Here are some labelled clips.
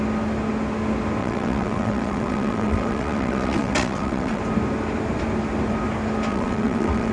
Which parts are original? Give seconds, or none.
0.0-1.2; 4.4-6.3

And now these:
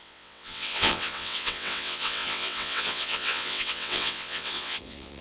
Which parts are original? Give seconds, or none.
none

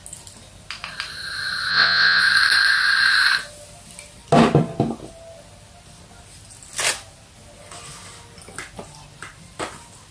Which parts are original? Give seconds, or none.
0.0-1.7; 2.2-10.1

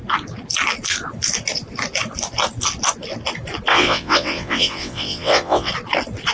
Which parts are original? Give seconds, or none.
0.0-3.7; 5.7-6.3

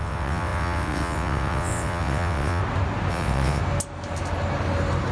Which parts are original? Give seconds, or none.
2.6-3.1; 3.6-5.1

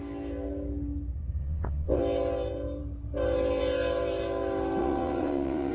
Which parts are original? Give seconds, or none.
0.0-1.4; 2.0-4.8

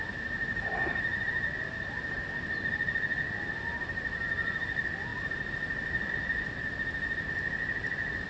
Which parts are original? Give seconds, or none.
0.0-8.3

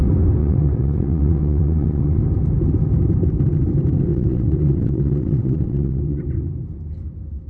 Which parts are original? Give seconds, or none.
0.0-0.4; 2.2-4.1; 6.2-7.5